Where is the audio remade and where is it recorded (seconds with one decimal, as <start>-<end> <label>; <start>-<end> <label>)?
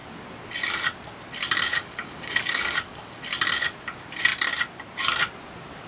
0.0-1.7 recorded; 1.7-3.2 remade; 3.2-5.9 recorded